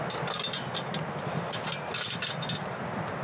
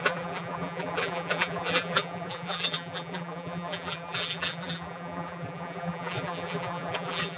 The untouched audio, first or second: first